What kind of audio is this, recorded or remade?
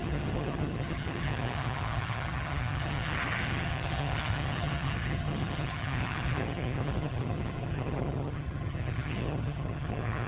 remade